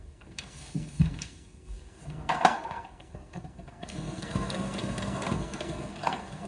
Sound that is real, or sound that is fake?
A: fake